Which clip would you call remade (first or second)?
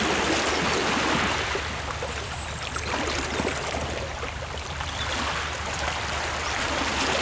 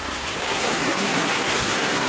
second